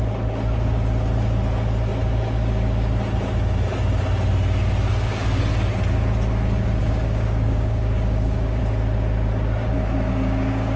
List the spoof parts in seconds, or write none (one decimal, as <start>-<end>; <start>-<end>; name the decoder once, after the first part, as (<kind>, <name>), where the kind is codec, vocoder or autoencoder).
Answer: 4.9-5.4 (codec, DAC); 6.8-8.6; 10.1-10.8